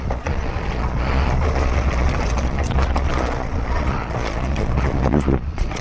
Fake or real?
fake